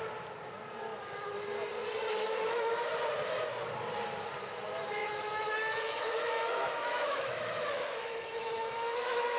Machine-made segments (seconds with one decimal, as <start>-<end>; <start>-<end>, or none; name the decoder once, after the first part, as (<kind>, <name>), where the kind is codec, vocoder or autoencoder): 2.1-2.7 (autoencoder, DAC-VAE); 5.0-9.4